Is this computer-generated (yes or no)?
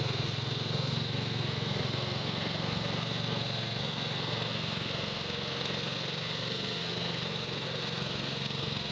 yes